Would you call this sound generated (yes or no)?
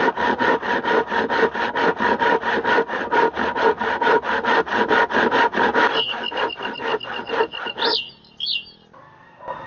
no